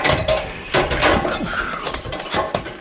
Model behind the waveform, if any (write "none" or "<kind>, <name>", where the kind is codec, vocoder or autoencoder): vocoder, BigVGAN v2